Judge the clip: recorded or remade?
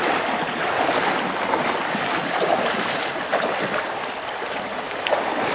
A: recorded